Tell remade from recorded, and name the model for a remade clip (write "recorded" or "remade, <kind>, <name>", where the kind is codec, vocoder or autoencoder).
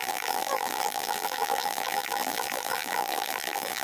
remade, vocoder, BigVGAN v2